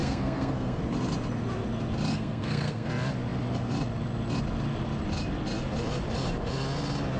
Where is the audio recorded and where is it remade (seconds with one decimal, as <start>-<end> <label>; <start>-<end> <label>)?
0.0-0.8 remade; 0.8-2.1 recorded; 2.1-2.9 remade; 2.9-7.2 recorded